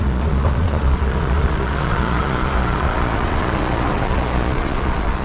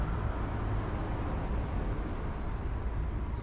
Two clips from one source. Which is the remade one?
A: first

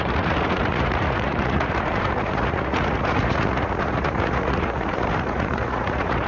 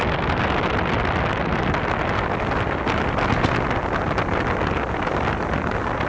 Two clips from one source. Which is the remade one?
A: first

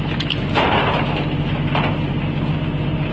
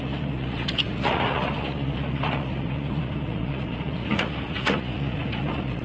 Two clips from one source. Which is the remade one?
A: second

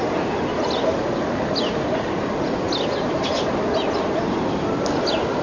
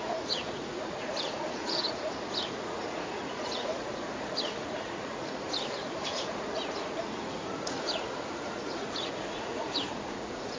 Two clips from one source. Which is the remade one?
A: second